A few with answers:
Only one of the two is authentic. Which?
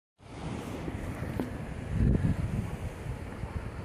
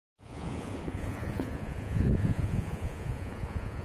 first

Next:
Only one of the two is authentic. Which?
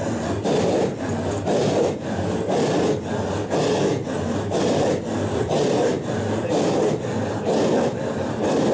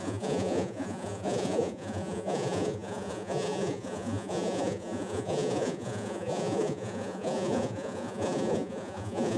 first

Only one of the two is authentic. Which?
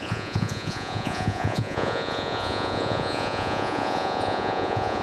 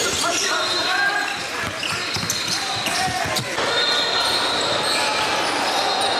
second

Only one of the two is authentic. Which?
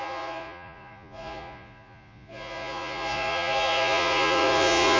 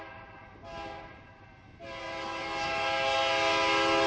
second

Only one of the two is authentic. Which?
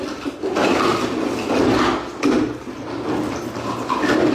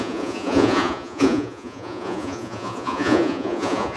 first